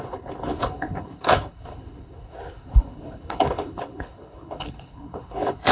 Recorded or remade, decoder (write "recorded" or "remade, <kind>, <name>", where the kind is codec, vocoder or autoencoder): remade, codec, HILCodec